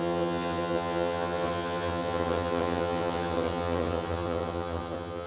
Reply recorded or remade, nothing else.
remade